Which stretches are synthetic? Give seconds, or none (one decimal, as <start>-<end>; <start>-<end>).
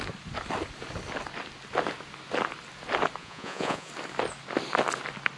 3.2-3.9